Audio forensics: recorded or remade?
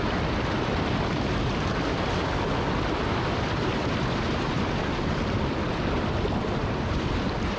remade